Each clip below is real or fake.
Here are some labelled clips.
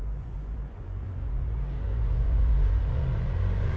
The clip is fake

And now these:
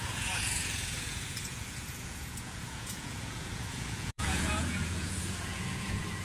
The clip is fake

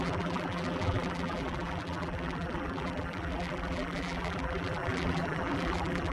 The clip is fake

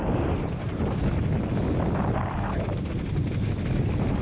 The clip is real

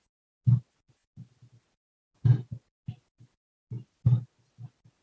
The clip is real